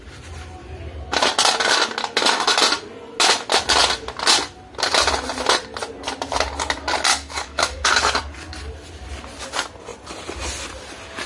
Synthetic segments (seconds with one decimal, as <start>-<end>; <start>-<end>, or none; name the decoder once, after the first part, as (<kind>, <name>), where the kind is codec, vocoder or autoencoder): 7.1-8.3 (codec, DAC)